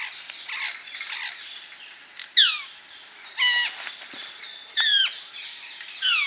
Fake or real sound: real